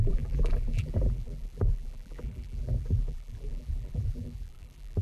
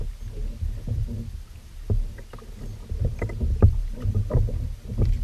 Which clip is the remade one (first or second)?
first